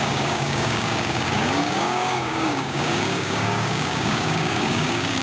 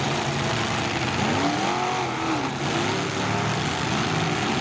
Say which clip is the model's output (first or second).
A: first